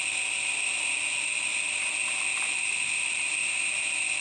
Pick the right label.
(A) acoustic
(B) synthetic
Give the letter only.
B